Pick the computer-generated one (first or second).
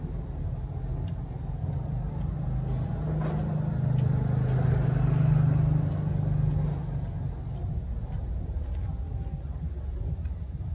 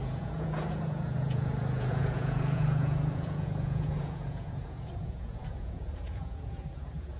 second